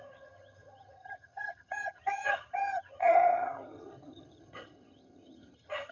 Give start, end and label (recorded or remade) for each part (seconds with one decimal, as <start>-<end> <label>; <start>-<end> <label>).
0.0-5.9 remade